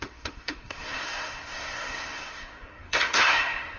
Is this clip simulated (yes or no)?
yes